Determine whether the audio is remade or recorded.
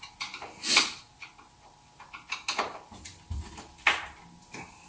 recorded